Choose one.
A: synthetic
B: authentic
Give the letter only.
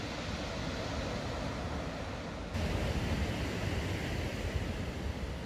B